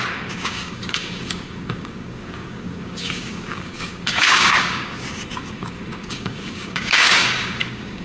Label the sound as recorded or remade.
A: remade